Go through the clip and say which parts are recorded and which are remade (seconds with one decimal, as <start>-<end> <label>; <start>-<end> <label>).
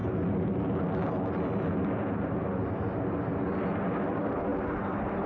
0.0-5.3 recorded